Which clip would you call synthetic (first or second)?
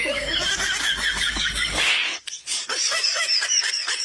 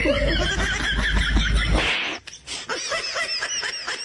first